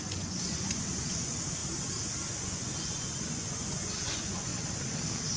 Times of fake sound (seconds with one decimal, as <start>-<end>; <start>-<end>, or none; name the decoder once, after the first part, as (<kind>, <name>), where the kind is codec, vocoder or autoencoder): 0.0-1.6 (vocoder, Vocos); 2.3-4.5